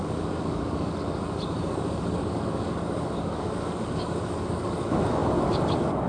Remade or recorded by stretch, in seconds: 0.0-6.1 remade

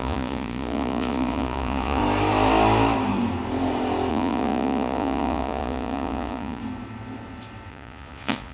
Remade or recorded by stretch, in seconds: 0.0-2.0 remade; 2.0-4.1 recorded; 4.1-6.6 remade; 6.6-7.7 recorded; 7.7-8.5 remade

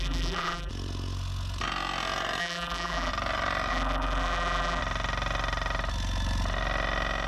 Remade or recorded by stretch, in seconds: 0.0-0.7 remade; 0.7-2.4 recorded; 2.4-3.1 remade; 3.1-3.7 recorded; 3.7-4.8 remade; 4.8-7.3 recorded

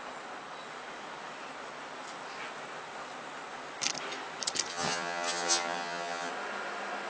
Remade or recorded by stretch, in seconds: 0.0-4.7 recorded; 4.7-6.3 remade; 6.3-7.1 recorded

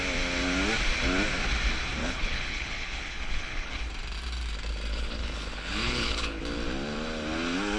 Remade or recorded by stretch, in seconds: 0.0-2.0 recorded; 2.0-3.9 remade; 3.9-4.9 recorded; 4.9-6.4 remade; 6.4-7.8 recorded